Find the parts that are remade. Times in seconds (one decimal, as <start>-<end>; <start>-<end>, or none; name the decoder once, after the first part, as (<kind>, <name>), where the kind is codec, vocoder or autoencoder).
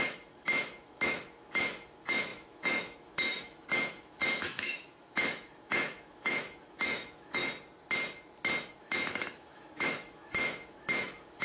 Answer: 0.0-7.4 (autoencoder, DAC-VAE); 8.7-11.4